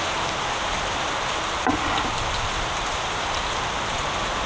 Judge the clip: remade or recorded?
recorded